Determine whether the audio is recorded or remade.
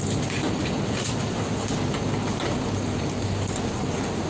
recorded